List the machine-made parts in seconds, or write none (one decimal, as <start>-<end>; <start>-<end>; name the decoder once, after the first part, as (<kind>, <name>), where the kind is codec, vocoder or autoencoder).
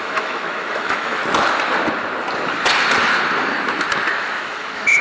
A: 0.0-1.2 (autoencoder, DAC-VAE); 4.2-5.0